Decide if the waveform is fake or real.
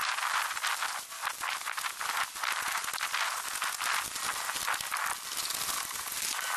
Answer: real